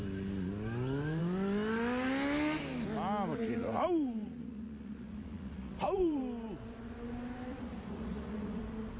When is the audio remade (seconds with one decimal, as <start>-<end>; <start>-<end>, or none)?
3.3-6.2; 7.5-8.6